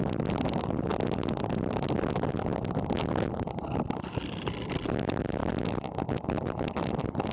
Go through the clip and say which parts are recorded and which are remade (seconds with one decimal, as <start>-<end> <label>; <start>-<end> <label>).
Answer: 0.0-0.9 remade; 0.9-4.3 recorded; 4.3-5.4 remade; 5.4-7.3 recorded